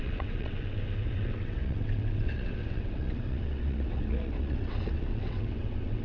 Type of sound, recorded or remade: remade